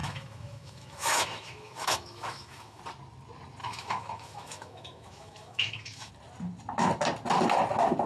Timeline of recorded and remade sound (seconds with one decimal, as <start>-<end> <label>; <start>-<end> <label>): 0.0-2.8 remade; 2.8-3.6 recorded; 3.6-6.1 remade; 6.1-8.1 recorded